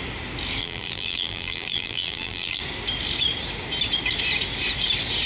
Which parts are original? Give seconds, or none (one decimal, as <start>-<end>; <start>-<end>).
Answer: 0.0-0.6; 2.6-5.3